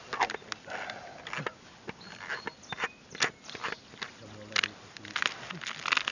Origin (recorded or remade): recorded